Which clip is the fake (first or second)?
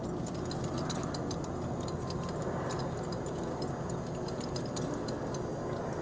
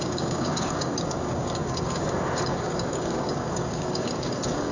second